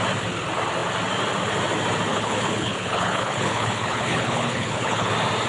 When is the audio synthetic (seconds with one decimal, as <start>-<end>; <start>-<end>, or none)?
2.1-5.1